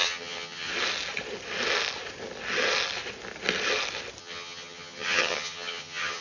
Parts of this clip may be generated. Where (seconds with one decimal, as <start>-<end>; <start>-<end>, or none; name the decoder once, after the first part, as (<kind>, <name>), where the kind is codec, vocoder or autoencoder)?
0.0-0.7 (vocoder, HiFi-GAN); 4.2-6.2